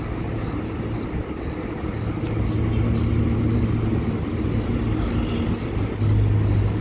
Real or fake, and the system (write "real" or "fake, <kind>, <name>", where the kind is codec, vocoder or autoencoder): real